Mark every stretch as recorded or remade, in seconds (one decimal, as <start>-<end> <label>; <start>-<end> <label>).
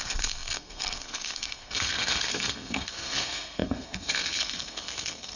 0.0-5.4 remade